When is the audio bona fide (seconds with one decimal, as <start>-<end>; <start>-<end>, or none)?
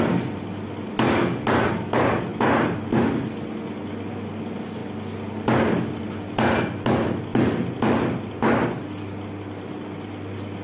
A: 0.0-10.6